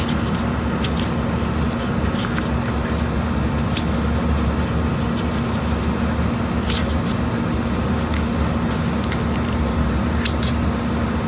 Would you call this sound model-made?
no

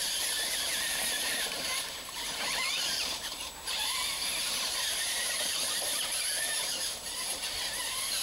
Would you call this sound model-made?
yes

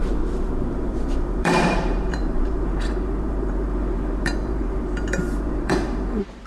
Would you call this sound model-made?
yes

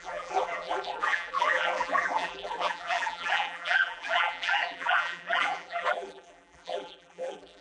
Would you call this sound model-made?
yes